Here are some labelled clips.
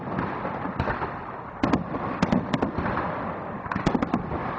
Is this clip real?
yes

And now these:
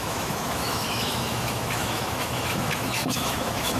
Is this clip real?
no